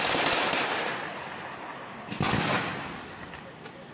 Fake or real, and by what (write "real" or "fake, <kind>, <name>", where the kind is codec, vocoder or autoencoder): real